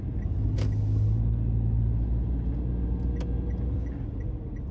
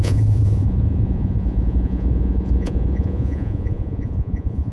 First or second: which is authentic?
first